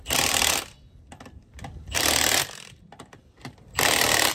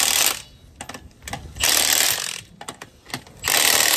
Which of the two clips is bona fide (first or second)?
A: second